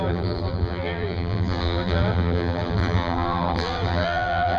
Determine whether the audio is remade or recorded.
remade